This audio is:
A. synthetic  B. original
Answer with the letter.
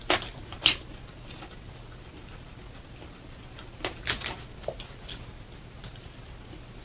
B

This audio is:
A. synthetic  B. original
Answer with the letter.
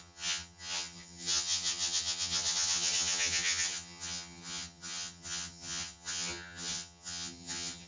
A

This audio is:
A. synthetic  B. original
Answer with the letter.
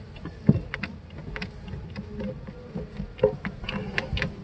B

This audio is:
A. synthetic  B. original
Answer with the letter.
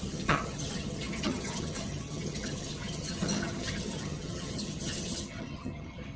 A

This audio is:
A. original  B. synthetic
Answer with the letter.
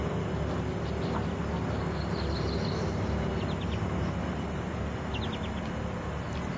A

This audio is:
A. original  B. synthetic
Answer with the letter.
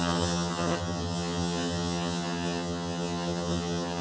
B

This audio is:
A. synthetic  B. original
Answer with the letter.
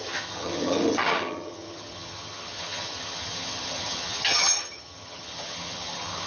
A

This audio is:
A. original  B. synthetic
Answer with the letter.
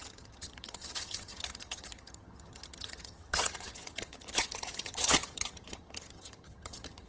B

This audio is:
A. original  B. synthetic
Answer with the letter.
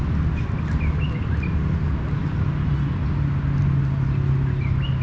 A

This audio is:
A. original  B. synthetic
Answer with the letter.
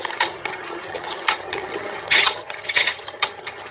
B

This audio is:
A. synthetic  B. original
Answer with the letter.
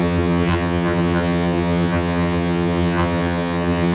A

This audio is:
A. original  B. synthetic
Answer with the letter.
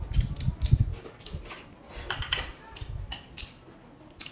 A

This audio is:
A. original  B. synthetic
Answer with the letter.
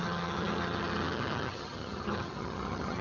B